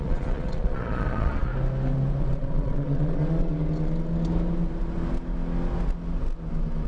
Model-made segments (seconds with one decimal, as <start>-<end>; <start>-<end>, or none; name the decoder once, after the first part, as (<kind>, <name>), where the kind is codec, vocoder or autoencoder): 0.0-1.5 (vocoder, Vocos); 2.2-3.5